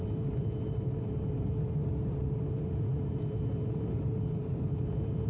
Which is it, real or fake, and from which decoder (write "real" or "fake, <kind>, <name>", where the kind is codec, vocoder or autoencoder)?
fake, vocoder, BigVGAN v2